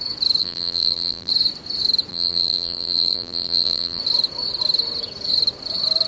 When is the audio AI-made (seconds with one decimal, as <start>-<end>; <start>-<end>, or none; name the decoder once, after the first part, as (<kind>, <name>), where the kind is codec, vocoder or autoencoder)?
0.4-1.3 (vocoder, BigVGAN v2); 2.1-4.0